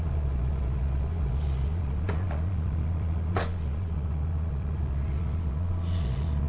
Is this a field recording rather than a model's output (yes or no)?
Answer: no